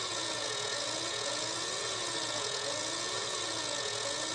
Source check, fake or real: fake